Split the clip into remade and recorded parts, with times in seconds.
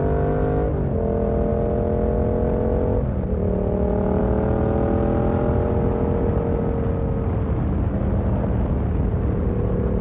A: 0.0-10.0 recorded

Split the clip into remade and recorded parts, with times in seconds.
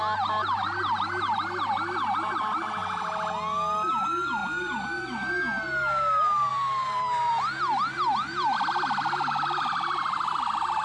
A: 0.0-4.4 recorded; 4.4-5.3 remade; 5.3-6.5 recorded; 6.5-7.3 remade; 7.3-10.8 recorded